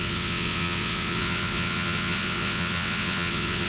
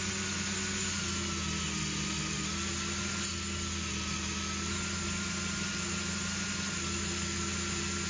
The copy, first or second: first